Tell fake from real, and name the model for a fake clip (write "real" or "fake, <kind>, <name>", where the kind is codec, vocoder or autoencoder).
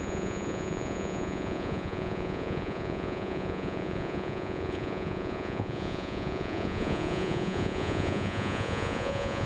fake, vocoder, Vocos